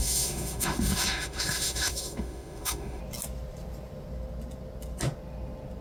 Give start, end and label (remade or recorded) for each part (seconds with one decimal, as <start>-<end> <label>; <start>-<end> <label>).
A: 0.0-3.0 remade; 3.0-5.8 recorded